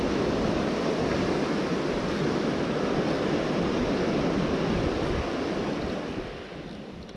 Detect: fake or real real